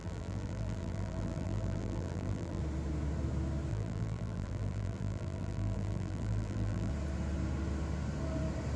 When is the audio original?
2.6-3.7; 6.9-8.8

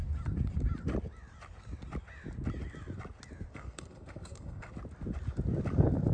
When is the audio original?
0.0-3.5; 4.7-6.1

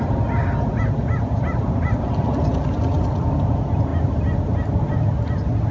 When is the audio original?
0.0-5.7

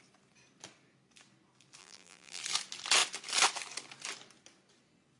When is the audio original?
0.0-1.8; 2.4-5.2